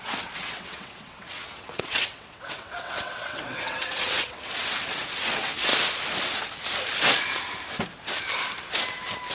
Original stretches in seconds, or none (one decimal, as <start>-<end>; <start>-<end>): 5.7-9.3